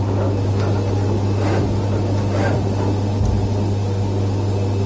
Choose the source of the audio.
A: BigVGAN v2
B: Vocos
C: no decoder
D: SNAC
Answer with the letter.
C